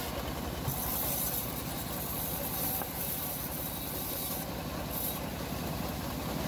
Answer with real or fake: real